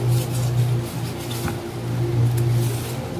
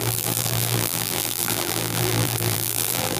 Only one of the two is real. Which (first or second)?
first